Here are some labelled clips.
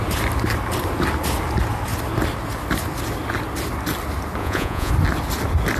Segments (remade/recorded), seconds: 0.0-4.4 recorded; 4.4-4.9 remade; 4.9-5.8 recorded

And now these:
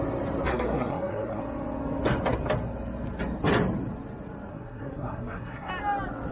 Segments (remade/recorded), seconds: 0.0-0.5 recorded; 0.5-1.4 remade; 1.4-4.5 recorded; 4.5-5.7 remade; 5.7-6.3 recorded

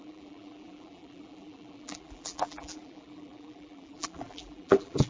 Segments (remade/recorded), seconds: 0.0-5.1 remade